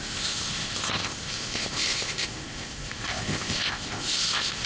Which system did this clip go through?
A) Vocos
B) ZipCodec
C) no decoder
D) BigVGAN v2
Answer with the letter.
B